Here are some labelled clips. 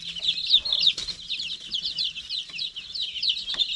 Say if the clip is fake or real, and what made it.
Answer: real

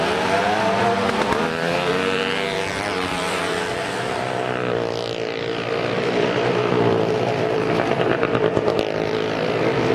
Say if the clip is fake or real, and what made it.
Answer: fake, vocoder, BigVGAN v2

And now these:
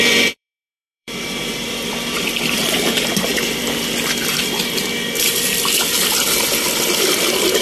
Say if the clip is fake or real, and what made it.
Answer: fake, vocoder, BigVGAN v2